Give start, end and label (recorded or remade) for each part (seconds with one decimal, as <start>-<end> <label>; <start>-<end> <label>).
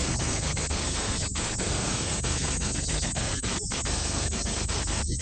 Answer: 0.0-5.2 remade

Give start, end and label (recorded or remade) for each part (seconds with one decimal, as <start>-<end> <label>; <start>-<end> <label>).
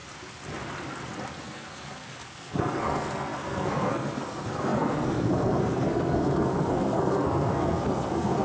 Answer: 0.0-1.4 recorded; 1.4-8.4 remade